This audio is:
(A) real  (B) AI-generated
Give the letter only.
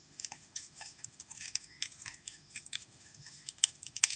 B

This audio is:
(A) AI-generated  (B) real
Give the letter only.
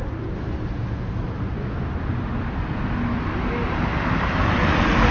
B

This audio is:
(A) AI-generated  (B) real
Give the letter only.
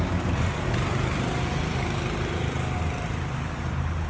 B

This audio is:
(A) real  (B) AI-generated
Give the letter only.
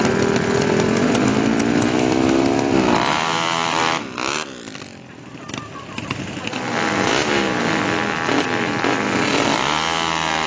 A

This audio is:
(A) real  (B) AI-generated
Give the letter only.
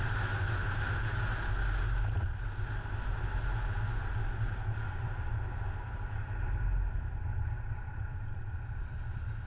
A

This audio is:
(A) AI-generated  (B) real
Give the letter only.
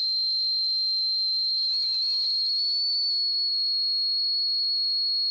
B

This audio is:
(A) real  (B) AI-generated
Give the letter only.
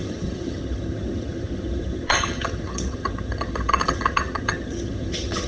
B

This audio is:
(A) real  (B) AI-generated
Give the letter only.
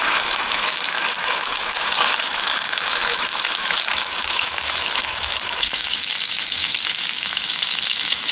B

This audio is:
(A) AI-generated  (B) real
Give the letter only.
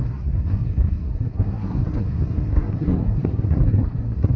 A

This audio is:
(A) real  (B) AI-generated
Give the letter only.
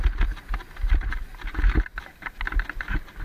A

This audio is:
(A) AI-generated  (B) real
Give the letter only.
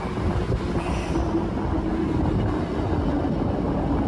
B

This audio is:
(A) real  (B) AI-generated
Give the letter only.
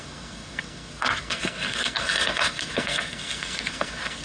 B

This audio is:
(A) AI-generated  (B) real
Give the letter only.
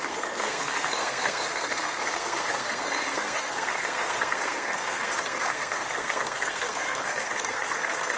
A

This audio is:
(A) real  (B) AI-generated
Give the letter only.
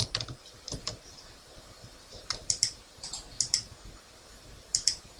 B